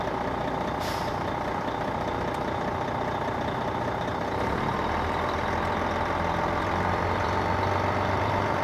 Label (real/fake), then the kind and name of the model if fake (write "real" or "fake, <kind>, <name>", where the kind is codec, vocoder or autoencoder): fake, vocoder, BigVGAN v2